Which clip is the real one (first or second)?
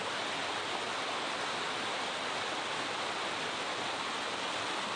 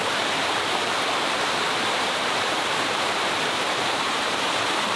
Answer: first